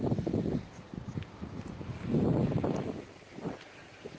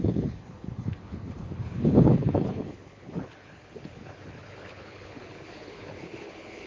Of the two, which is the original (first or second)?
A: first